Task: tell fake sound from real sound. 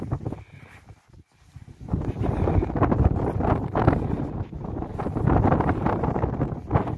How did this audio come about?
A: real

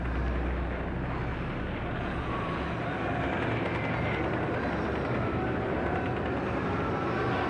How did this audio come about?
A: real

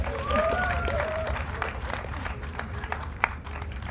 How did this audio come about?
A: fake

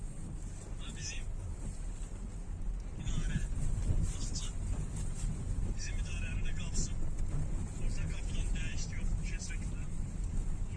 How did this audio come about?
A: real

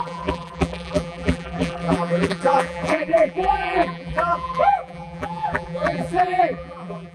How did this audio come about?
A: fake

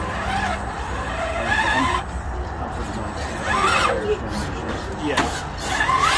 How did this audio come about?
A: real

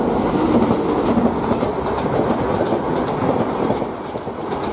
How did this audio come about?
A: real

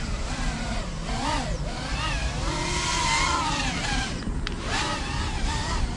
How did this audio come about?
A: fake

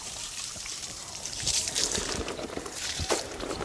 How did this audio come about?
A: fake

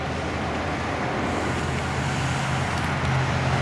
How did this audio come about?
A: real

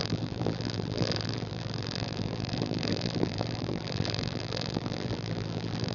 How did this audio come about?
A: fake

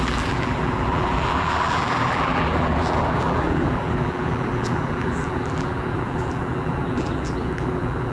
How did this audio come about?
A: fake